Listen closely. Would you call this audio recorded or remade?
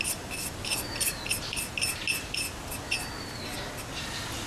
recorded